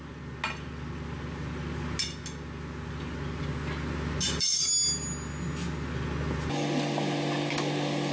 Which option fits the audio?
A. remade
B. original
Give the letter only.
B